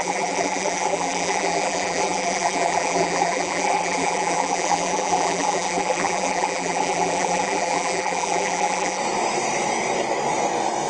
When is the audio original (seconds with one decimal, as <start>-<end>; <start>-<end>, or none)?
9.0-10.9